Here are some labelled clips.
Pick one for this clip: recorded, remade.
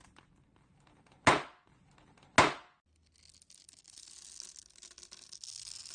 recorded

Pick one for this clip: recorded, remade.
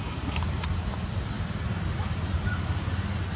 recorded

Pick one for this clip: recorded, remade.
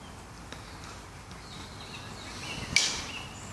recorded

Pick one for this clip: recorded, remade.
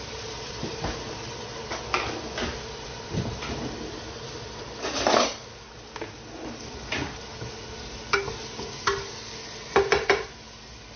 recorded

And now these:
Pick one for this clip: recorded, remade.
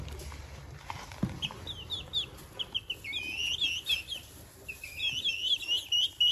recorded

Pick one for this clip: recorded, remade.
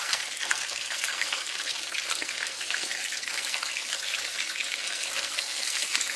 remade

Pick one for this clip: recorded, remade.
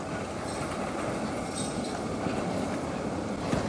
recorded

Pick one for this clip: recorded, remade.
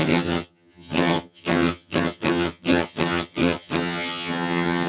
remade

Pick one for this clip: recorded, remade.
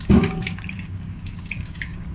remade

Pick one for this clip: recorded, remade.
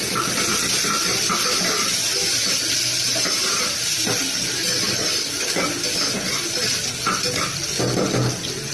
recorded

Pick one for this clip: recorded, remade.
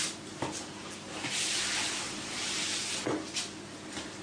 recorded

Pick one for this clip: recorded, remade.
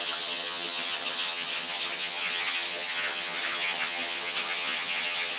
remade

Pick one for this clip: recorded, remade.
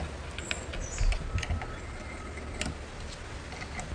recorded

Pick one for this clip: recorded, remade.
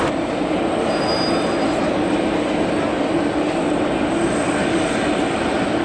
recorded